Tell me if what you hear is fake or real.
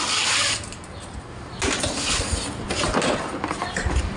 real